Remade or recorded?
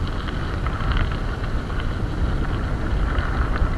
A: recorded